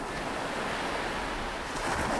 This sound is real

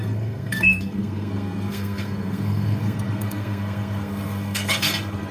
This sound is fake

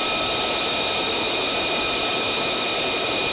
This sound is real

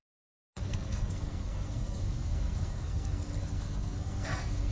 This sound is fake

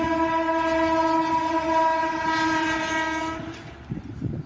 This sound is real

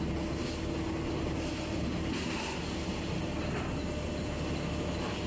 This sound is real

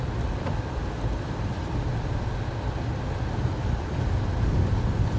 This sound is real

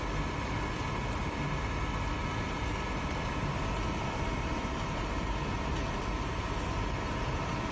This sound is real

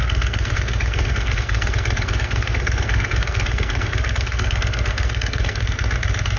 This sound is fake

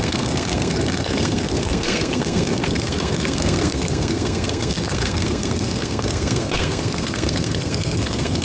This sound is fake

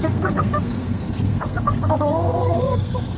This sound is fake